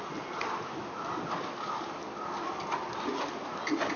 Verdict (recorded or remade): recorded